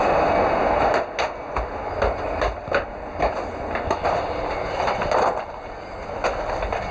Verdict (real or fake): real